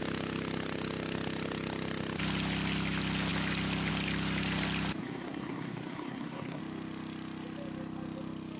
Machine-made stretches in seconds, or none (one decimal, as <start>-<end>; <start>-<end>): 5.0-6.6